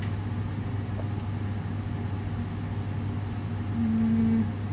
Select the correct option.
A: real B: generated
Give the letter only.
A